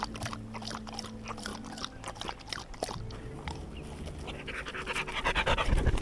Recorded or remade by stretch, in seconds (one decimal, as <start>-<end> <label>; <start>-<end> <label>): 0.0-6.0 recorded